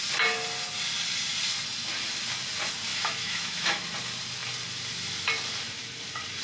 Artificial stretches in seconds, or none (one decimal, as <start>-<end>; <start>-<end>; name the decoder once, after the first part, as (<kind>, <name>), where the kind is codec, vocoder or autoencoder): 2.9-3.8 (autoencoder, DAC-VAE)